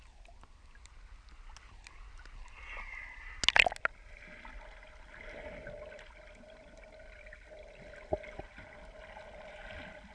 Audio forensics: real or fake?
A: real